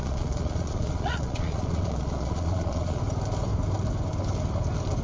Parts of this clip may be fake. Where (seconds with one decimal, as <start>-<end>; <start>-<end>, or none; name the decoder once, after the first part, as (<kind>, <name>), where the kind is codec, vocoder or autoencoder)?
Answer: 0.0-3.0 (vocoder, Vocos)